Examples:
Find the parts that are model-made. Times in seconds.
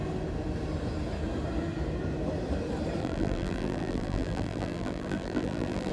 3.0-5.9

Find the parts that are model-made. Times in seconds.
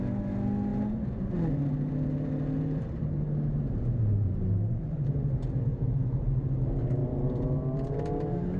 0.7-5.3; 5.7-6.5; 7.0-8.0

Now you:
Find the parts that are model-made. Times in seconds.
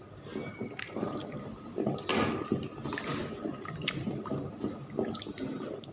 0.4-2.1; 3.1-4.7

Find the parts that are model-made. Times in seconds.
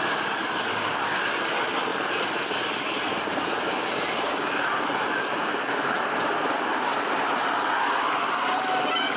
6.7-7.6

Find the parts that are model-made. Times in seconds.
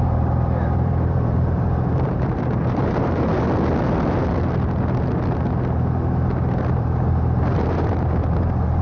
0.0-3.3; 6.6-8.8